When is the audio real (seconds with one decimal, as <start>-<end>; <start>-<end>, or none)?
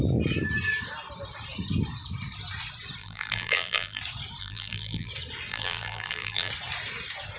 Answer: 0.0-3.0; 4.0-4.4; 5.1-5.5; 6.5-7.4